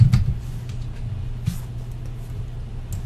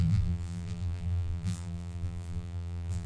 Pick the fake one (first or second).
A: second